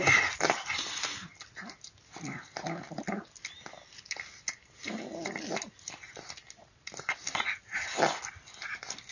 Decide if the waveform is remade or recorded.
recorded